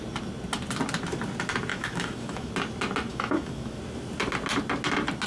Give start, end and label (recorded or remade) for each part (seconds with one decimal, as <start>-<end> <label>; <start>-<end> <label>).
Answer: 0.0-1.7 recorded; 1.7-2.5 remade; 2.5-3.1 recorded; 3.1-3.8 remade; 3.8-5.3 recorded

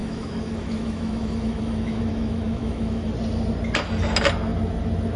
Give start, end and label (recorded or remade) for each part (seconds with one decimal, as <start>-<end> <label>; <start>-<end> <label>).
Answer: 0.0-3.1 remade; 3.1-5.2 recorded

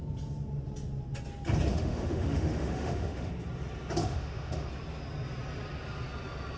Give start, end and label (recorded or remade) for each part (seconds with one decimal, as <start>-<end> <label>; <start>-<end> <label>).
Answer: 0.0-1.7 recorded; 1.7-3.3 remade; 3.3-4.0 recorded; 4.0-4.7 remade; 4.7-6.6 recorded

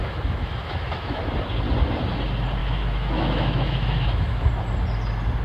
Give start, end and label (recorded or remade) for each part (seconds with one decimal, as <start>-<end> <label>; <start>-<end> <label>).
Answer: 0.0-1.2 remade; 1.2-2.6 recorded; 2.6-4.5 remade; 4.5-5.4 recorded

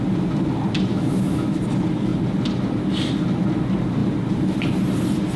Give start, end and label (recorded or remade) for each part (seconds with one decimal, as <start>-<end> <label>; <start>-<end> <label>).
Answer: 0.0-0.9 recorded; 0.9-1.6 remade; 1.6-5.4 recorded

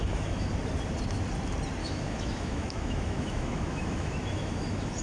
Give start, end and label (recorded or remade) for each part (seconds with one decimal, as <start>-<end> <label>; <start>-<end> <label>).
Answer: 0.0-0.5 remade; 0.5-1.8 recorded; 1.8-5.0 remade

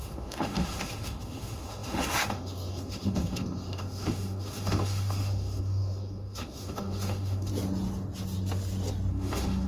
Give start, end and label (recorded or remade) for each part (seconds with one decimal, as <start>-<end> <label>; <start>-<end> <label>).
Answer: 0.0-7.5 remade; 7.5-9.1 recorded; 9.1-9.7 remade

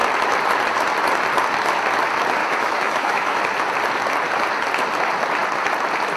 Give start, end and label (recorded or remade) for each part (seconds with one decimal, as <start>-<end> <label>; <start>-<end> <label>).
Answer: 0.0-2.4 recorded; 2.4-3.4 remade; 3.4-6.2 recorded